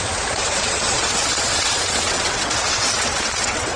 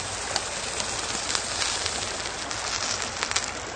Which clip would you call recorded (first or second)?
second